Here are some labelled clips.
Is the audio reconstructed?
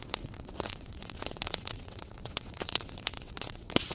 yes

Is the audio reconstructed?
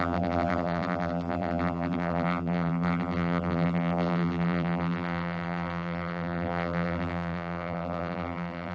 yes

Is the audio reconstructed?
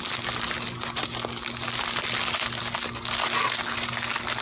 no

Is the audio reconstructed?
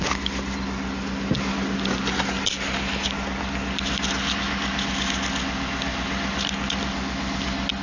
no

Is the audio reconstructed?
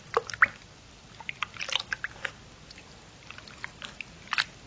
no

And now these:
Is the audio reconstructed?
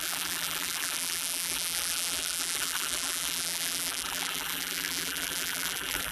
yes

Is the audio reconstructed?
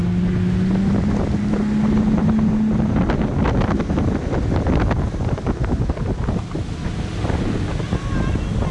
no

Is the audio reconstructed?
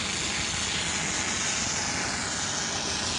no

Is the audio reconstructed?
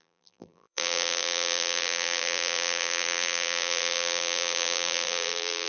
yes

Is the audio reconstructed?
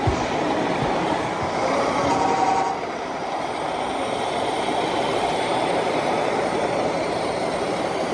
yes